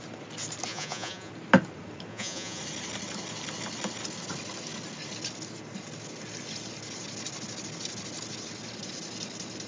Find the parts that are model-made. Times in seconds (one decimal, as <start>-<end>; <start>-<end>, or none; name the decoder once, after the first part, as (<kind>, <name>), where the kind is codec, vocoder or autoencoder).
0.7-1.3 (vocoder, Vocos); 2.1-2.6